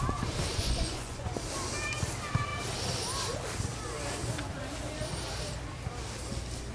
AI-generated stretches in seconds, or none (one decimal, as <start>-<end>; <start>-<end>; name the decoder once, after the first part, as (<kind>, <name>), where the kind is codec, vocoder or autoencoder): 0.5-1.4 (vocoder, Vocos)